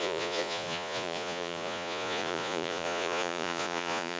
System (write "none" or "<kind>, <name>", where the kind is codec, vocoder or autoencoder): vocoder, Vocos